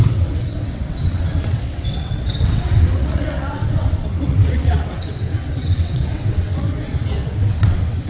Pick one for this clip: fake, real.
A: fake